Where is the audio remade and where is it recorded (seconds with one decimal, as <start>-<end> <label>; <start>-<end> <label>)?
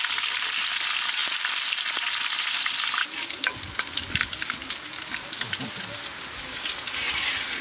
0.0-3.0 recorded; 3.0-5.6 remade; 5.6-7.6 recorded